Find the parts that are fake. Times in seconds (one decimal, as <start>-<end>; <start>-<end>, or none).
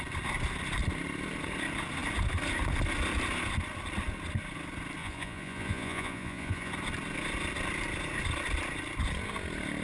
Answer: 5.0-6.7